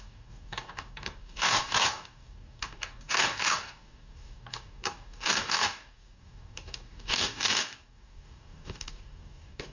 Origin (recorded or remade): remade